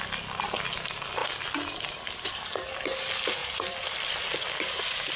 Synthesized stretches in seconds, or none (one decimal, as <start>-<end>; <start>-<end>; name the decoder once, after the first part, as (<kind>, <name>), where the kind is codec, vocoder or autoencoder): 1.2-2.3 (vocoder, BigVGAN v2); 3.4-5.2